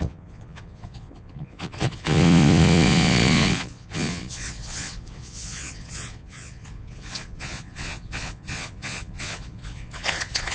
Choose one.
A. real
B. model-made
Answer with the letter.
B